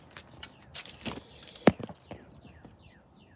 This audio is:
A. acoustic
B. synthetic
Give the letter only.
A